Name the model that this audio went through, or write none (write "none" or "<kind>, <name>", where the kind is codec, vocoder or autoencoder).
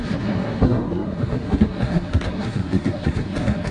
codec, SNAC